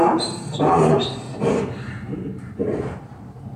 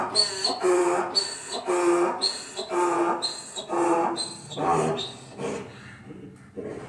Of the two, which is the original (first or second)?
second